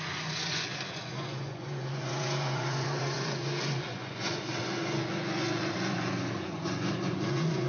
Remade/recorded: remade